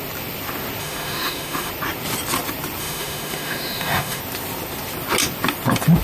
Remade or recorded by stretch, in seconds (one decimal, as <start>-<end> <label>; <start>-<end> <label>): 0.0-0.8 recorded; 0.8-1.7 remade; 1.7-2.8 recorded; 2.8-4.2 remade; 4.2-6.0 recorded